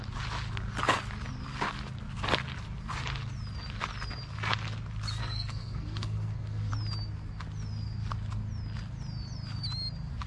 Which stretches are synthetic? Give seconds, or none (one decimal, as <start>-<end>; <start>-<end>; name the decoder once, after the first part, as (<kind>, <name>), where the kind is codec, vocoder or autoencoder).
5.2-6.7 (codec, SNAC)